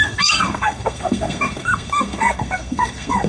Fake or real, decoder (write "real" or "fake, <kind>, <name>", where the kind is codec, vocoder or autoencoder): fake, codec, SNAC